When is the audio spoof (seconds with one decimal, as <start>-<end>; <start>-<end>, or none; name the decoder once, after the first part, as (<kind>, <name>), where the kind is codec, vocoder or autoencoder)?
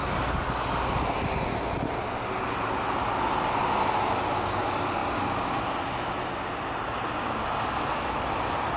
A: none